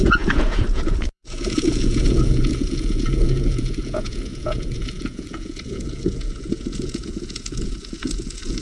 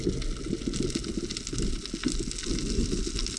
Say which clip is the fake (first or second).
first